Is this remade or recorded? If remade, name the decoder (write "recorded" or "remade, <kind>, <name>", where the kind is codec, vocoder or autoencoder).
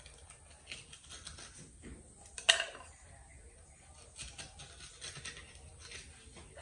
recorded